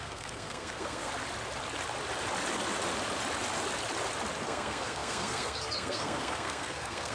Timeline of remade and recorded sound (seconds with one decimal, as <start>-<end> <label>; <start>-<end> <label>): 0.0-1.1 remade; 1.1-4.4 recorded; 4.4-7.1 remade

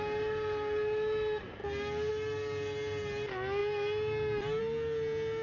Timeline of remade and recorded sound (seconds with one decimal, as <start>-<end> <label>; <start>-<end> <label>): 0.0-5.4 recorded

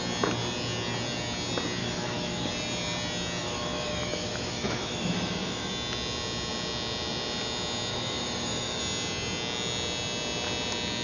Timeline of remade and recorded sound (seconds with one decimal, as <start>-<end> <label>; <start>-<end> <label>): 0.0-1.8 recorded; 1.8-2.5 remade; 2.5-3.4 recorded; 3.4-5.7 remade; 5.7-7.9 recorded; 7.9-8.8 remade; 8.8-11.0 recorded

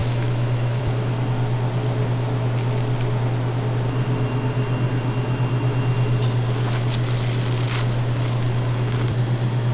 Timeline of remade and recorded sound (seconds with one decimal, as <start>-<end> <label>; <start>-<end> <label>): 0.0-0.8 remade; 0.8-9.7 recorded